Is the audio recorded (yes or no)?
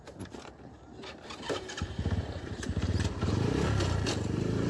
no